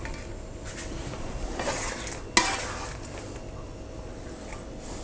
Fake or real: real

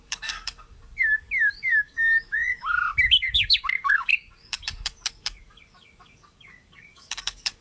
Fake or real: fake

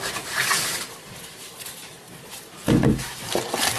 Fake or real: real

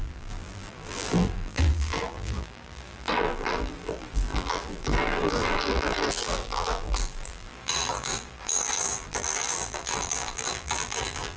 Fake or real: fake